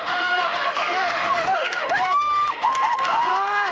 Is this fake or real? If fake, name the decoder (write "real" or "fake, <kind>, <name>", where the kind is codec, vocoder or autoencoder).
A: fake, autoencoder, DAC-VAE